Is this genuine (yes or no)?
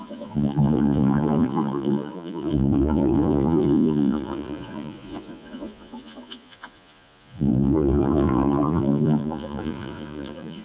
no